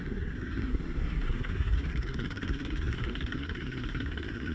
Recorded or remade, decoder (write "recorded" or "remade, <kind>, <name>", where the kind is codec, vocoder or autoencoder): remade, codec, SNAC